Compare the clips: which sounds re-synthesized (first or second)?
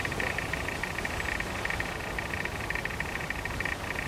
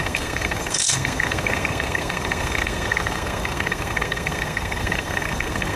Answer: second